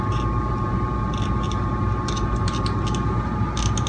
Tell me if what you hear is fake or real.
real